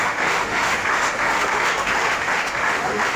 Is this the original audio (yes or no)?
no